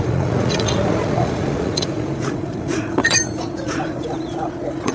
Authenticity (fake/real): fake